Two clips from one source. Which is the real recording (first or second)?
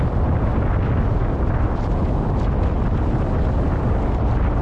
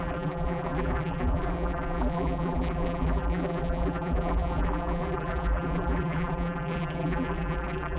first